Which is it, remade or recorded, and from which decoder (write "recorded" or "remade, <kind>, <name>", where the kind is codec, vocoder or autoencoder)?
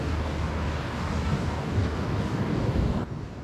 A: remade, codec, DAC